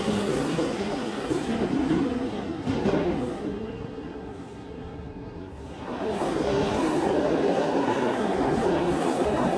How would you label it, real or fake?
fake